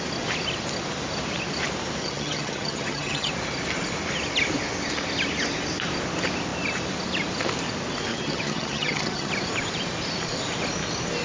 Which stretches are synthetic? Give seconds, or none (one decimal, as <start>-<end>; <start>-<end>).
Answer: 2.0-3.3; 8.1-9.3